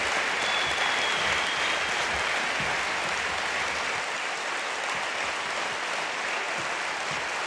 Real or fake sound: real